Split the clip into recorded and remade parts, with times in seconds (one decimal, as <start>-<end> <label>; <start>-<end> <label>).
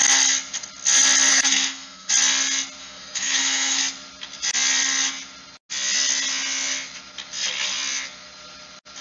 0.0-1.3 recorded; 1.3-2.1 remade; 2.1-2.8 recorded; 2.8-3.8 remade; 3.8-9.0 recorded